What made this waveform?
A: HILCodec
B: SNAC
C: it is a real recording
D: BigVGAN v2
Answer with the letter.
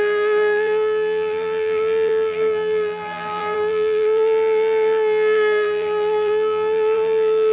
D